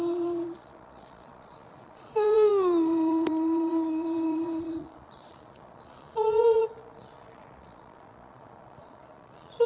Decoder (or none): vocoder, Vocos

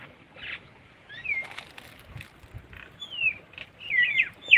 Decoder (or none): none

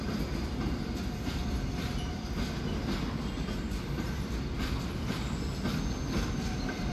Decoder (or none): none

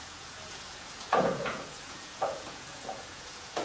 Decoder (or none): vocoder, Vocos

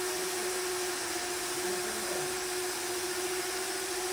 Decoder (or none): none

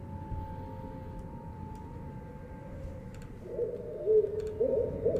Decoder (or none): none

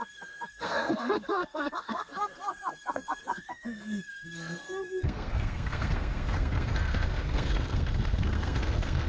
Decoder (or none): codec, SNAC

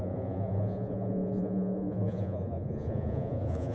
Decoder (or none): vocoder, Vocos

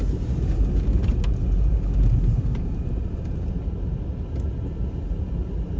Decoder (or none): none